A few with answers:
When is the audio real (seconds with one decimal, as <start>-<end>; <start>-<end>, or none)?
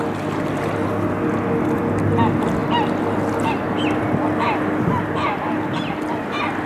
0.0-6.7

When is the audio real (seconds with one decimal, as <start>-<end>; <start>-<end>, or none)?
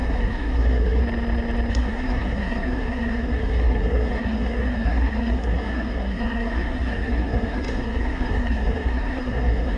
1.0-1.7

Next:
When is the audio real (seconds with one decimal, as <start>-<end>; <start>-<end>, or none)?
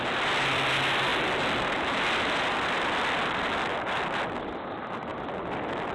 0.0-5.9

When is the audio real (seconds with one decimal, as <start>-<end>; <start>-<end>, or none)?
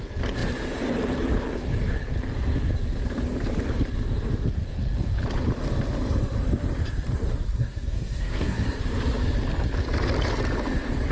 0.0-7.3; 8.8-11.1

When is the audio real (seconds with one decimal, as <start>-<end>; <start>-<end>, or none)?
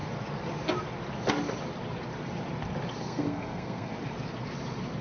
0.0-3.0; 3.9-5.0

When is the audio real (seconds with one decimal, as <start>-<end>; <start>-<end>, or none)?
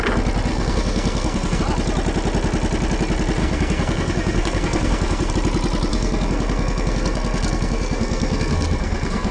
0.0-0.5; 1.6-3.4; 5.3-5.9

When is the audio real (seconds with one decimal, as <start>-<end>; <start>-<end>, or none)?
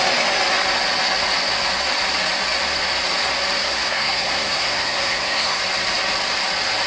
0.0-3.6; 5.6-6.9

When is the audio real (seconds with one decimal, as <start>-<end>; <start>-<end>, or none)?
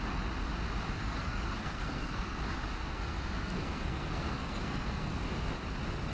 0.0-1.0; 2.4-2.8; 5.2-6.1